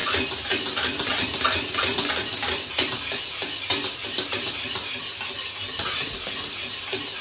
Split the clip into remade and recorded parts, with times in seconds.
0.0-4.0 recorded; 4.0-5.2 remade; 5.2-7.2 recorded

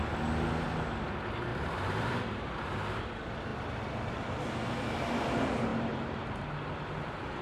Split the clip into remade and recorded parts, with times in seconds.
0.0-1.5 recorded; 1.5-3.0 remade; 3.0-5.7 recorded; 5.7-6.4 remade; 6.4-7.4 recorded

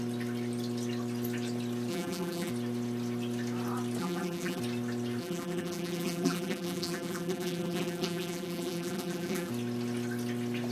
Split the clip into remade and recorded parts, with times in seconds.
0.0-1.9 recorded; 1.9-2.5 remade; 2.5-4.0 recorded; 4.0-4.6 remade; 4.6-5.2 recorded; 5.2-9.5 remade; 9.5-10.7 recorded

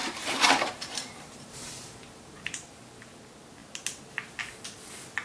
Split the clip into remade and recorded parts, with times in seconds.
0.0-3.1 remade; 3.1-5.2 recorded

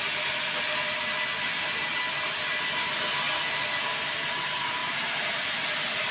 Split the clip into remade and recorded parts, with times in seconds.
0.0-4.8 recorded; 4.8-5.5 remade; 5.5-6.1 recorded

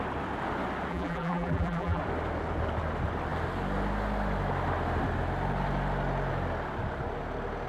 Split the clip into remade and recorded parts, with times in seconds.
0.0-0.9 recorded; 0.9-2.0 remade; 2.0-7.7 recorded

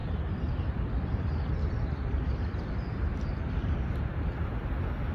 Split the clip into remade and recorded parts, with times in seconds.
0.0-3.6 recorded; 3.6-4.2 remade; 4.2-5.1 recorded